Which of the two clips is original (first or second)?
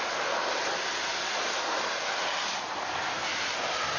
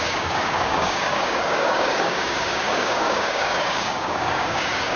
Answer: first